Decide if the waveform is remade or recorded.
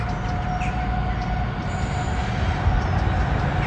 recorded